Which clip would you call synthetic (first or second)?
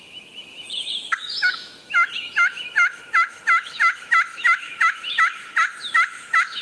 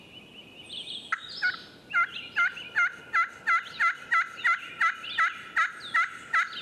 first